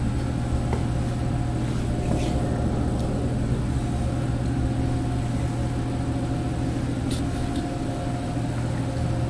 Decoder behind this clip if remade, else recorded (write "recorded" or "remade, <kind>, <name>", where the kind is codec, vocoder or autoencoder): recorded